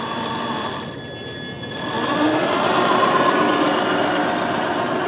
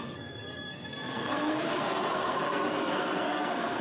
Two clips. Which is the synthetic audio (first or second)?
second